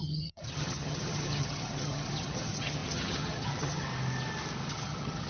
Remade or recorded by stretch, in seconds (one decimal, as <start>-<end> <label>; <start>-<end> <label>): 0.0-3.9 remade; 3.9-4.7 recorded; 4.7-5.3 remade